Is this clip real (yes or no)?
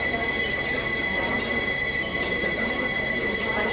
yes